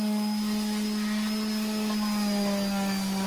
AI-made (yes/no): no